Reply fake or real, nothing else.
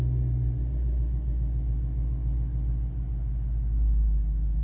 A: real